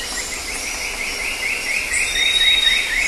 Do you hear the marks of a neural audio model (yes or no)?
no